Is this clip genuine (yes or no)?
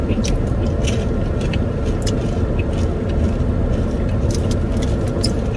yes